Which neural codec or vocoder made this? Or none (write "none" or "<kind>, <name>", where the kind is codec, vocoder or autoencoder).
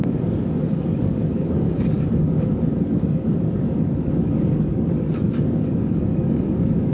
codec, DAC